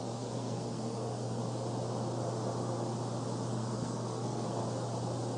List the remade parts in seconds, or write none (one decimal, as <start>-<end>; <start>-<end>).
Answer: 0.0-1.4; 3.5-4.6